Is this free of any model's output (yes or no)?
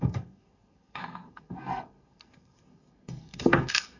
no